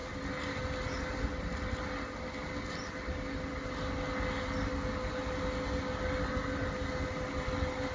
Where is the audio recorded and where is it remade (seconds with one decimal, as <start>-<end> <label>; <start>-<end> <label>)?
0.0-7.9 recorded